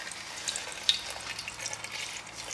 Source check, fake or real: real